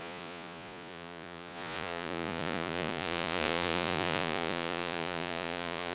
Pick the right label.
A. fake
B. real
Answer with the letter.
A